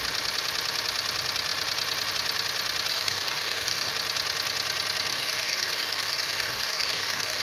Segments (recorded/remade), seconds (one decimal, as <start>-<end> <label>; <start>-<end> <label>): 0.0-2.9 recorded; 2.9-3.9 remade; 3.9-5.1 recorded; 5.1-7.4 remade